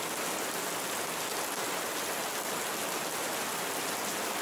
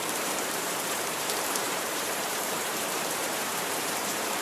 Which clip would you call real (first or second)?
first